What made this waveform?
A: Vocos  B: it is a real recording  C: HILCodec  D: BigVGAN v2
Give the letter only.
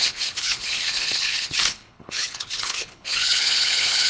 C